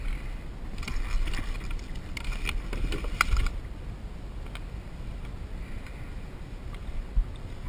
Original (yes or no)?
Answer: yes